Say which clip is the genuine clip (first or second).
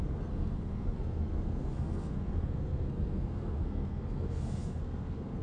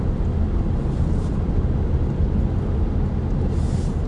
second